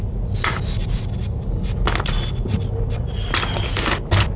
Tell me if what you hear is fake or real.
real